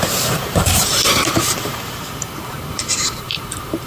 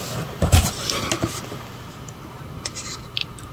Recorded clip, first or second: second